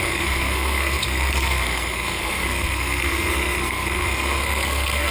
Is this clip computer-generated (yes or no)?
yes